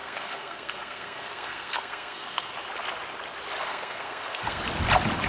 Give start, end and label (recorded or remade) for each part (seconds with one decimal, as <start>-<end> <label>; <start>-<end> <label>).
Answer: 0.0-2.5 remade; 2.5-3.7 recorded; 3.7-4.6 remade; 4.6-5.3 recorded